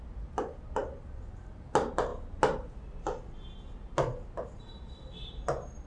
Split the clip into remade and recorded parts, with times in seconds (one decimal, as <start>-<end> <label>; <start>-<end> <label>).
0.0-5.9 recorded